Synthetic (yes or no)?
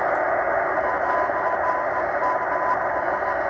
no